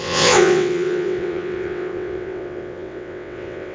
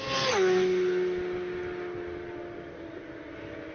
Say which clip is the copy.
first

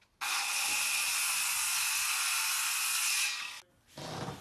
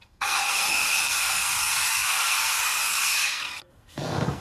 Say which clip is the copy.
second